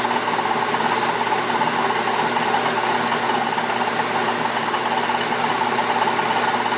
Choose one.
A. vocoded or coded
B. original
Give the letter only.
B